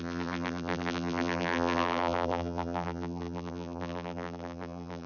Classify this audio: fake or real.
fake